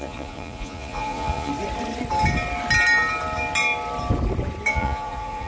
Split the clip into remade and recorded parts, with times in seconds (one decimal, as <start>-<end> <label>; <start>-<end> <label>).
0.0-1.5 remade; 1.5-4.7 recorded; 4.7-5.5 remade